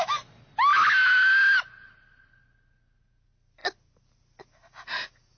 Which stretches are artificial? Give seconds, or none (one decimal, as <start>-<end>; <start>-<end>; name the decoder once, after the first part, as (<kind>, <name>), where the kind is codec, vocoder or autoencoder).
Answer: none